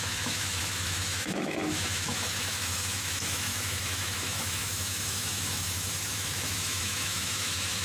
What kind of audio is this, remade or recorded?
remade